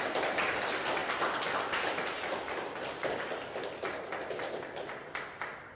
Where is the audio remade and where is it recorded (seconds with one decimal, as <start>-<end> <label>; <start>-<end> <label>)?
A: 0.0-1.0 recorded; 1.0-4.5 remade; 4.5-5.8 recorded